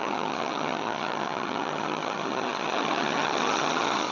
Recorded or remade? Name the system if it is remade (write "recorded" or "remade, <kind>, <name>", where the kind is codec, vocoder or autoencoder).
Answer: remade, vocoder, HiFi-GAN